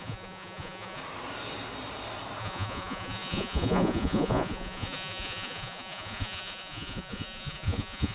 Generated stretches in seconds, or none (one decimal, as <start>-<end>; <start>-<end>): 0.0-1.0; 2.4-8.1